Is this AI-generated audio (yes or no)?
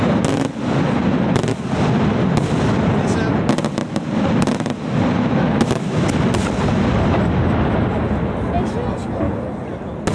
no